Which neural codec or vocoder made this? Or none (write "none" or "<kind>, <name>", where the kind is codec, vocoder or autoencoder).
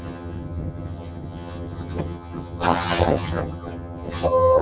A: vocoder, HiFi-GAN